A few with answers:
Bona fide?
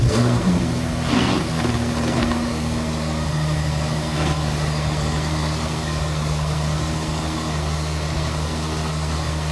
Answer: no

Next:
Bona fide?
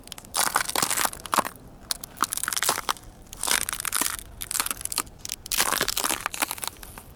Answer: yes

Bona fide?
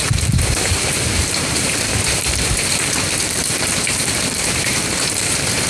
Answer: no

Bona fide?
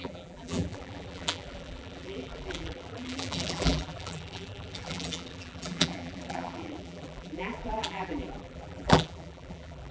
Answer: no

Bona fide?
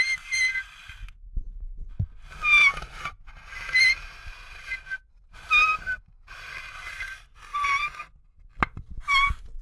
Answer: yes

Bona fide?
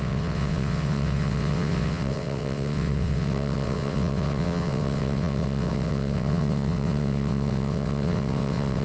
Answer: no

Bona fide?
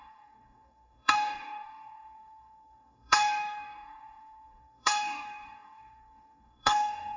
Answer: no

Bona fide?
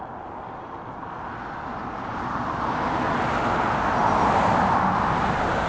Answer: yes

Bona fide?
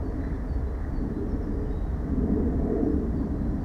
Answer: yes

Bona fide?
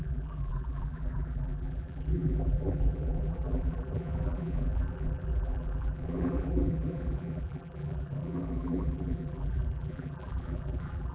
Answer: no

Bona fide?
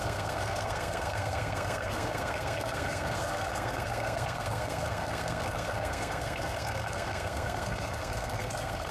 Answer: no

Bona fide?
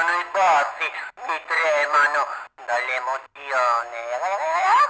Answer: yes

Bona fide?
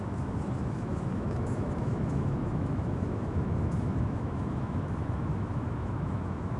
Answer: no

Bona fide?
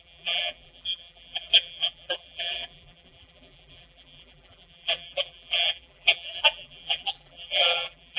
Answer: no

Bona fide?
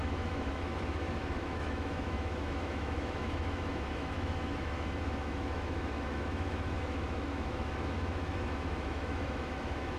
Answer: no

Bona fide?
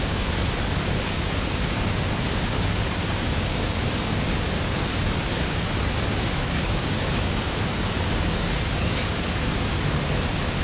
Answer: no